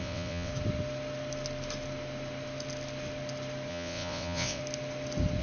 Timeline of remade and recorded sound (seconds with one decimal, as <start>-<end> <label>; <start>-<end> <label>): 0.0-0.5 remade; 0.5-3.7 recorded; 3.7-4.6 remade; 4.6-5.4 recorded